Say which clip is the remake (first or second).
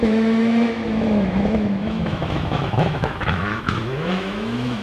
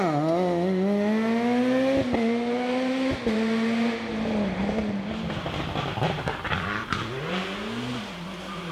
first